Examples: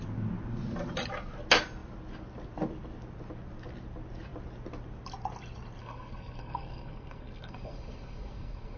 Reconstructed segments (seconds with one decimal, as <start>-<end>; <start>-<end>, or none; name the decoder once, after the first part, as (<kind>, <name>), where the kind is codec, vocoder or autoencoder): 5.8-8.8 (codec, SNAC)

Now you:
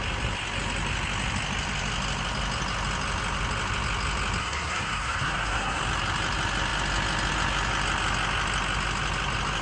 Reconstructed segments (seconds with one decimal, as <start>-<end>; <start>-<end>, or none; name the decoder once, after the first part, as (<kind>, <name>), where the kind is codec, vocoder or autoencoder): 4.4-5.8 (codec, SNAC)

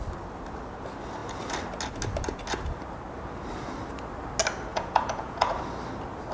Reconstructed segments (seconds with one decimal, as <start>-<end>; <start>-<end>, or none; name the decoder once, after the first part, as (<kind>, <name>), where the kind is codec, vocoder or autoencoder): 4.7-5.6 (vocoder, Vocos)

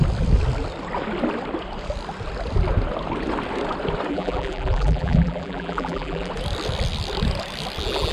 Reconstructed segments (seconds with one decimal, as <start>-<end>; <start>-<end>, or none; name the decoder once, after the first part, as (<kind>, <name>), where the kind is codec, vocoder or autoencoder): 4.1-6.3 (vocoder, BigVGAN v2)

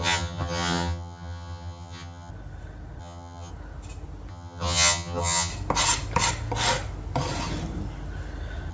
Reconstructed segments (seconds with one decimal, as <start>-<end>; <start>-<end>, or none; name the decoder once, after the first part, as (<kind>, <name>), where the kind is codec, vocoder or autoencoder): 0.0-2.3 (vocoder, HiFi-GAN); 3.0-3.5; 4.3-5.5

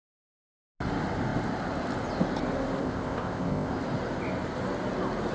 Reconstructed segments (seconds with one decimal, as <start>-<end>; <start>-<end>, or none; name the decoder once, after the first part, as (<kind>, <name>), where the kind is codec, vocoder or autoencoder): 2.8-3.8 (codec, ZipCodec)

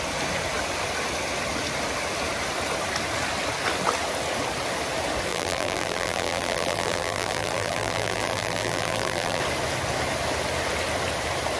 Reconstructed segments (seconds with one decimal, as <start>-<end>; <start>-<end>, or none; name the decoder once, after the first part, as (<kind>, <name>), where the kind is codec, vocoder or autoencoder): 5.3-9.4 (vocoder, BigVGAN v2)

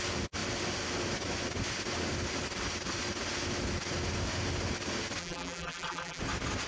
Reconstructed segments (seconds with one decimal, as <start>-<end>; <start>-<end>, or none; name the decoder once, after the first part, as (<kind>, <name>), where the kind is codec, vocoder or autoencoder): 5.2-6.2 (vocoder, BigVGAN v2)